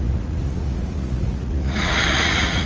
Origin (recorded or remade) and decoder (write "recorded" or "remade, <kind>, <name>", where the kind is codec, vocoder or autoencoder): remade, vocoder, Vocos